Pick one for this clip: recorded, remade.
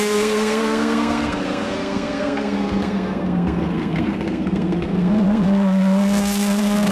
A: remade